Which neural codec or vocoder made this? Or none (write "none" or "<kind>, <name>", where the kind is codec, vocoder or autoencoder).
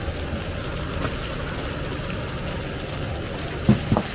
none